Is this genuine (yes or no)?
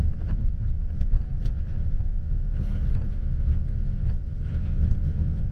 yes